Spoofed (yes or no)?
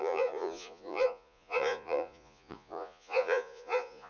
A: yes